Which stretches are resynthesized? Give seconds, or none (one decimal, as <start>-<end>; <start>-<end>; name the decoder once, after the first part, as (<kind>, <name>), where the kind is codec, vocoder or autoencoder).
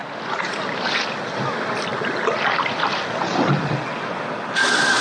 none